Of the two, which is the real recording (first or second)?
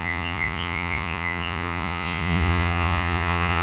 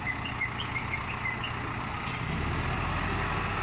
second